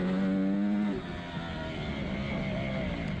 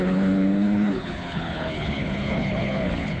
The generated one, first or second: second